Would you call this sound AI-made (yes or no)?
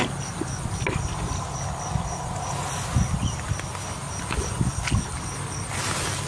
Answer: no